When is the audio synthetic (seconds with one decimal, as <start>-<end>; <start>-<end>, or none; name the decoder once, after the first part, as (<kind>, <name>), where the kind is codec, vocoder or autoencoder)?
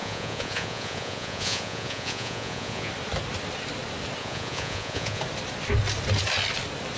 0.0-2.9 (vocoder, Vocos); 4.2-5.2